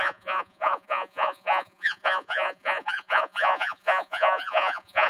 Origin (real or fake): fake